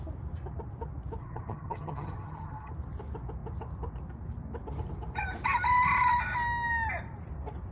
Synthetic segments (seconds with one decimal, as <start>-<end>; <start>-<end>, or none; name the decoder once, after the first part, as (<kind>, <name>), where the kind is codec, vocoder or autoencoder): 1.2-2.7 (vocoder, HiFi-GAN)